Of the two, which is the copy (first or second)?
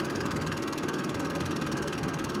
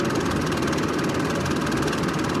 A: first